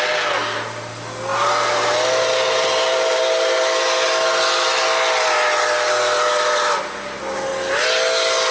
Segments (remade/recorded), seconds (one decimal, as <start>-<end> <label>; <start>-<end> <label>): 0.0-8.5 recorded